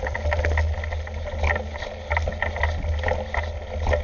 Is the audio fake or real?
real